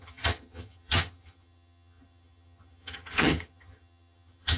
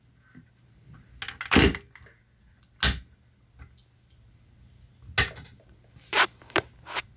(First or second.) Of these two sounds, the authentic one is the second